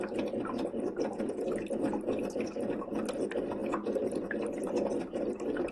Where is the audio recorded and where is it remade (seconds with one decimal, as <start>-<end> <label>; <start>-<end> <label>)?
0.0-5.7 recorded